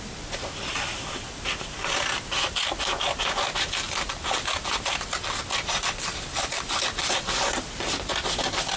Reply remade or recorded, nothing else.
remade